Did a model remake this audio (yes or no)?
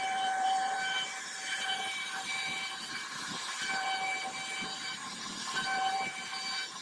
yes